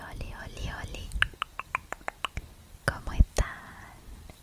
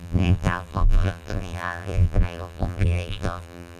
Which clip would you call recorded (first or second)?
first